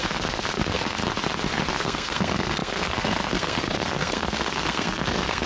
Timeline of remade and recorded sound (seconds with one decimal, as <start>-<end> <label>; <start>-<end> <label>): 0.0-1.0 remade; 1.0-1.7 recorded; 1.7-5.5 remade